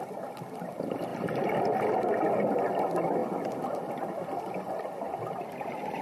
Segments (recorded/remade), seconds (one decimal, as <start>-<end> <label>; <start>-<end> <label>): 0.0-6.0 recorded